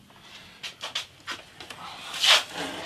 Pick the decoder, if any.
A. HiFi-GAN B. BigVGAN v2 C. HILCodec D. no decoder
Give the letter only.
D